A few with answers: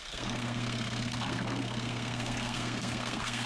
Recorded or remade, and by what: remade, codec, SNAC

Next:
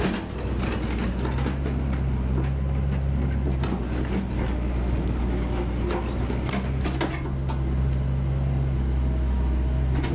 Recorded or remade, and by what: recorded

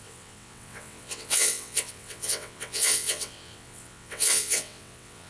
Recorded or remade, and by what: remade, vocoder, WaveNeXt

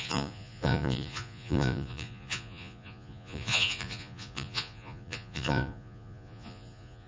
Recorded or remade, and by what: remade, vocoder, Vocos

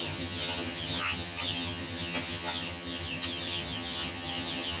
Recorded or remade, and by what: remade, vocoder, HiFi-GAN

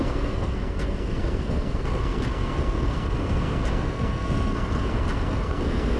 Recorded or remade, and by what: remade, codec, SNAC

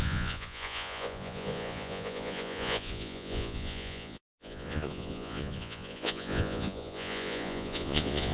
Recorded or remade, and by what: remade, vocoder, Vocos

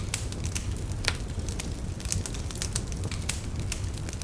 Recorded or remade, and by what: recorded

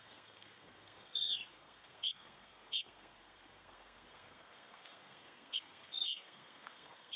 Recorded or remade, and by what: remade, codec, SNAC